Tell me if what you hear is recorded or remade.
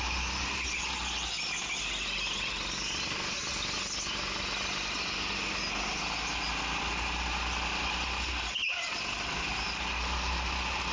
recorded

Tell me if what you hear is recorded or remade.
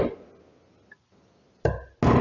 recorded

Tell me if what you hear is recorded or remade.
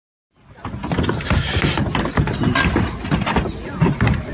recorded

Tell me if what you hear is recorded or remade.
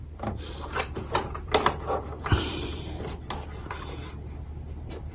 remade